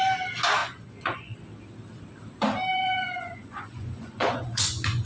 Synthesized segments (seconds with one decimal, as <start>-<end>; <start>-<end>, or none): 0.6-1.3; 2.7-5.1